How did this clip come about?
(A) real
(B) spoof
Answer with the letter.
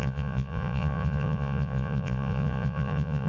B